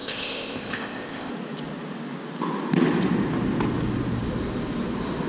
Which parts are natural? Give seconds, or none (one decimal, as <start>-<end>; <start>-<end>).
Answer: 1.3-5.3